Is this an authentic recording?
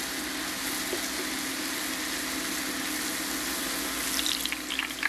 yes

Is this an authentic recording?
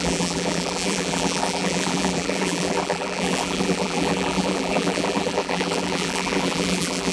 no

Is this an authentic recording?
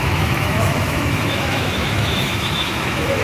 no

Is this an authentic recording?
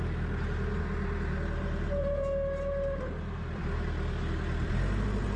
yes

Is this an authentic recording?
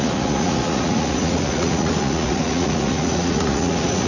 no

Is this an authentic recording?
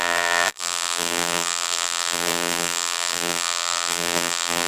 no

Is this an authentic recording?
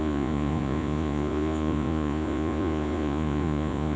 no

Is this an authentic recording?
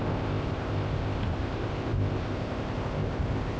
no